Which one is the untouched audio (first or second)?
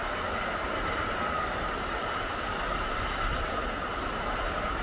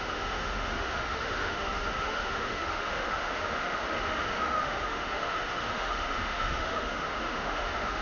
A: first